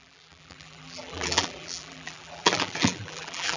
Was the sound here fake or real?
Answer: fake